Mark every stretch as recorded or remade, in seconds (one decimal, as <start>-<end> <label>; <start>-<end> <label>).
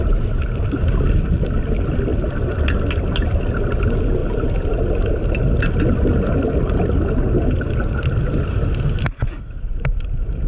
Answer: 0.0-10.5 recorded